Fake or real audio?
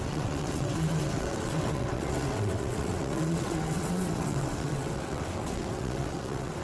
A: fake